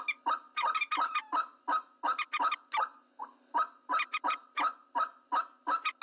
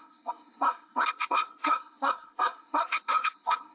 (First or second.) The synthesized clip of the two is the second